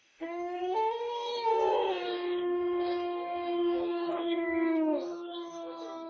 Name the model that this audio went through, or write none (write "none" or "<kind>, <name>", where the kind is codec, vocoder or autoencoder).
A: codec, DAC